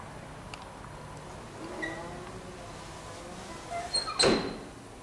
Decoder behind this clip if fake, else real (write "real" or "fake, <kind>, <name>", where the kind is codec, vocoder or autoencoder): real